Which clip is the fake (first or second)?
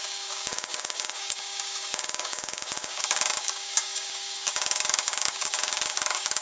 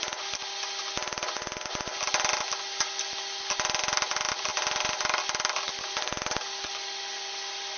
first